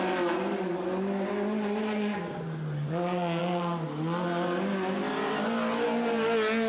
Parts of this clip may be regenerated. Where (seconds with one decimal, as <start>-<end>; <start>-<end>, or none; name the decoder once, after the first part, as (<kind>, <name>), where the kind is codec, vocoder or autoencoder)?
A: none